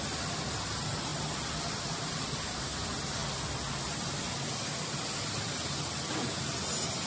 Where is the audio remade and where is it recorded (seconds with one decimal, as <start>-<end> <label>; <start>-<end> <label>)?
0.0-7.1 recorded